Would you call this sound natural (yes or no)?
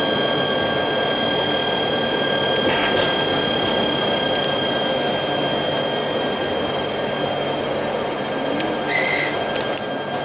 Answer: yes